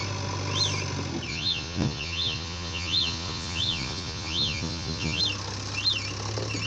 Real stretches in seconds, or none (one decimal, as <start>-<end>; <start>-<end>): 0.0-1.3; 5.2-6.7

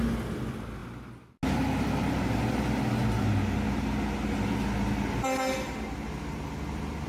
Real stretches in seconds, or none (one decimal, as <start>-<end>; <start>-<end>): 0.0-7.1

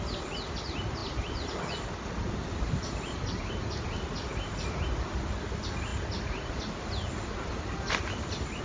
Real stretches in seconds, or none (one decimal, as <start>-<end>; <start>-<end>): 0.0-8.6

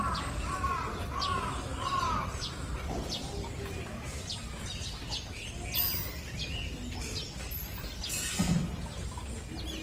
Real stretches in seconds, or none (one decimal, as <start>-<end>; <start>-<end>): 0.0-9.8

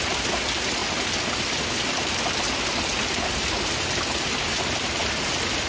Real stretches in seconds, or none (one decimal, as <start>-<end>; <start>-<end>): 0.0-5.7